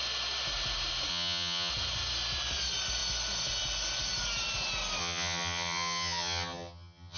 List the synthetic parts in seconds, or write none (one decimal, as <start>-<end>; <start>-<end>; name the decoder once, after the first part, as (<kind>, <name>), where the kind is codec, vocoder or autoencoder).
1.1-1.7 (vocoder, HiFi-GAN); 5.0-7.2